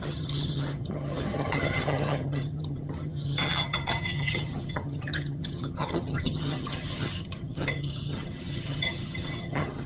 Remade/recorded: remade